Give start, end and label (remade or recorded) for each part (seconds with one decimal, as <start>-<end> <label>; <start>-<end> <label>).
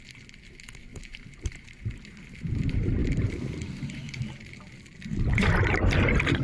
0.0-0.9 recorded; 0.9-2.0 remade; 2.0-3.0 recorded; 3.0-4.3 remade; 4.3-6.4 recorded